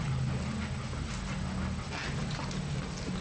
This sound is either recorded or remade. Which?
recorded